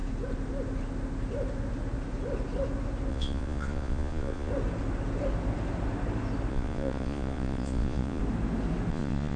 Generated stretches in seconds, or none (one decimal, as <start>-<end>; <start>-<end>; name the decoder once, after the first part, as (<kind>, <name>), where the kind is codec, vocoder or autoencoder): 3.1-4.5 (vocoder, Vocos); 6.5-8.2; 8.9-9.4